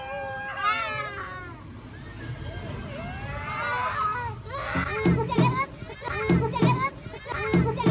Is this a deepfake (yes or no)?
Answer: no